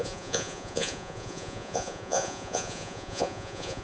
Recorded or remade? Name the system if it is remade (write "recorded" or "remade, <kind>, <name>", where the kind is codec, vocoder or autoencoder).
remade, vocoder, Vocos